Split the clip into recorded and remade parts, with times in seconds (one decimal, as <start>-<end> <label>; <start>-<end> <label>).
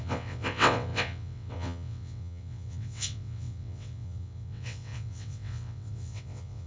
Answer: 0.0-6.7 remade